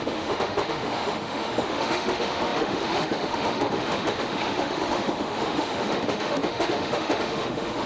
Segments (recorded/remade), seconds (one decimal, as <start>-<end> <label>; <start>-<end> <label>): 0.0-7.9 remade